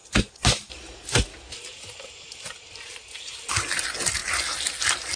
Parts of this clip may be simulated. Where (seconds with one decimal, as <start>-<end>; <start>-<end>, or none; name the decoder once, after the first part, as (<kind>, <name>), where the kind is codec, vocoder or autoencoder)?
none